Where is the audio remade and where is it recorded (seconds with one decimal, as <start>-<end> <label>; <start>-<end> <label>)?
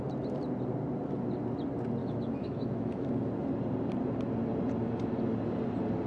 0.0-2.0 recorded; 2.0-3.1 remade; 3.1-6.1 recorded